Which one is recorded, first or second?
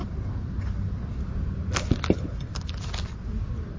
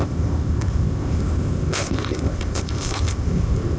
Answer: first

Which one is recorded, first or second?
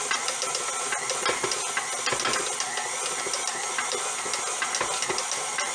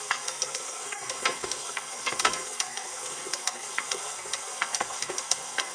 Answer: first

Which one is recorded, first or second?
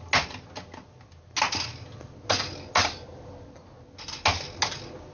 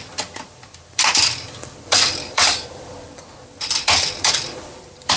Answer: first